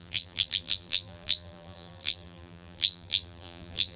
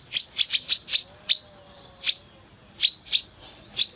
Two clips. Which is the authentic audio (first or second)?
second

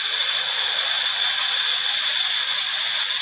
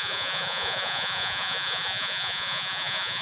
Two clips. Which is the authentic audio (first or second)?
first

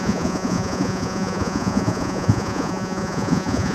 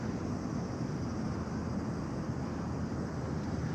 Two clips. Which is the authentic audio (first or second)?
second